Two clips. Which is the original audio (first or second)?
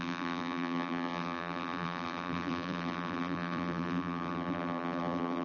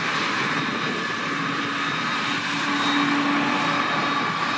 second